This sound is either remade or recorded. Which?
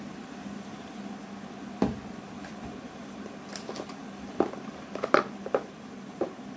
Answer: recorded